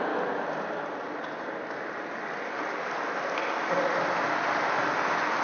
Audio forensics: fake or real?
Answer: real